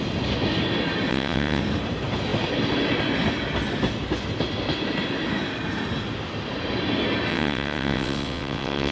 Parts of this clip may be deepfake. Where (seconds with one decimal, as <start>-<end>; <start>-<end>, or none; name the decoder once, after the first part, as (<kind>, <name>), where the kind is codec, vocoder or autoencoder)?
1.1-1.6 (vocoder, WaveNeXt); 7.3-8.9